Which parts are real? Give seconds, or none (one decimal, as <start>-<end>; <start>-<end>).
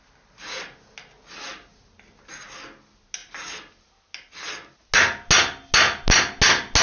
0.0-6.8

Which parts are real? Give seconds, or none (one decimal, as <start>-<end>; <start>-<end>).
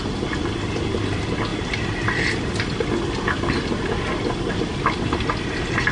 0.0-1.5; 3.5-5.9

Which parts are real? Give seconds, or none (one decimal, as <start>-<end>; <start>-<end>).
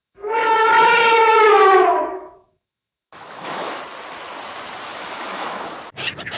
3.8-4.9; 5.7-6.4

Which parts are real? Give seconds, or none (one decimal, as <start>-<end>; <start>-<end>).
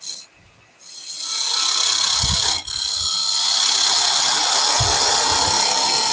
0.0-6.1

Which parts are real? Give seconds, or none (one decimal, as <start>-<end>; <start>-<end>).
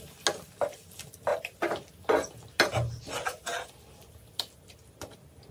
0.0-5.5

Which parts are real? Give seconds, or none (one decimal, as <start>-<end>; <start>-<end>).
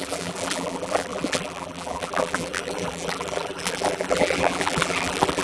none